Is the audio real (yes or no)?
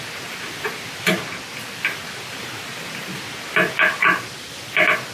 yes